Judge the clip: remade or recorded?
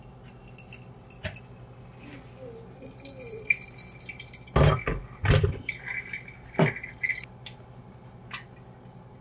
recorded